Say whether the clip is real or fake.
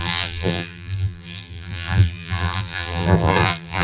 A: fake